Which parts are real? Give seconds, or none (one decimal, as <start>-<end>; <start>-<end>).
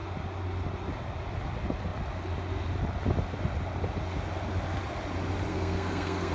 0.0-5.5